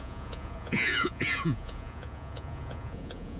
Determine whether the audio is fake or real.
fake